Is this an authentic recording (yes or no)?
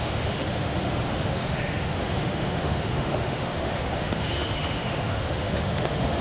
no